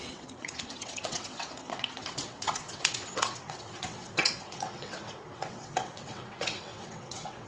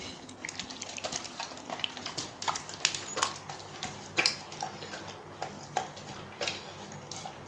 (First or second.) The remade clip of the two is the first